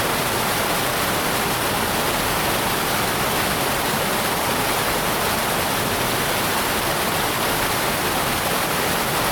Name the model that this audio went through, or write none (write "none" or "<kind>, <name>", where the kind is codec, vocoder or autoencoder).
none